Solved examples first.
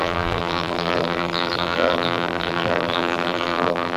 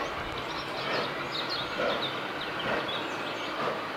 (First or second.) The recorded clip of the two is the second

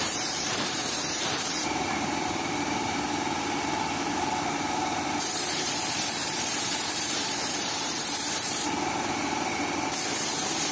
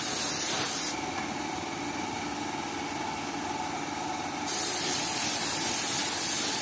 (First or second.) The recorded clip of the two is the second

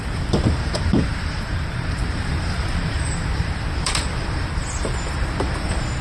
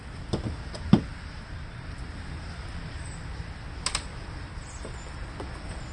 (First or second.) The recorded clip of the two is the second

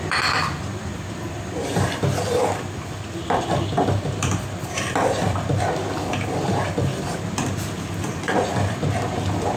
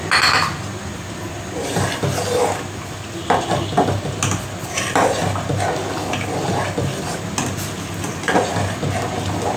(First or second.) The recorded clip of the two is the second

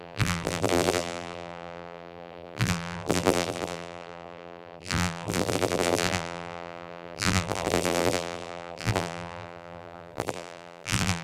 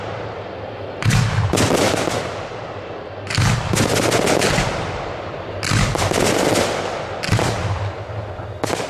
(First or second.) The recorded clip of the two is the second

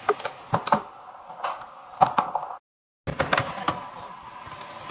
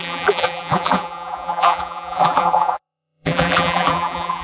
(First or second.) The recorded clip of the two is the first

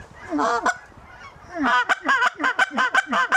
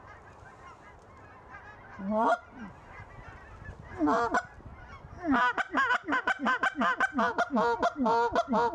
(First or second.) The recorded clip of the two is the second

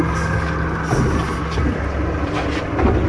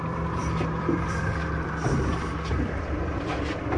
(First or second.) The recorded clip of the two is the first